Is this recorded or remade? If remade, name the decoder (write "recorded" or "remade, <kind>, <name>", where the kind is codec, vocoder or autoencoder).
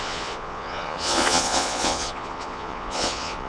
remade, vocoder, Vocos